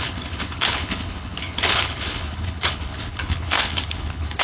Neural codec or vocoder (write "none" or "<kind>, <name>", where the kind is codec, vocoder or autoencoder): codec, HILCodec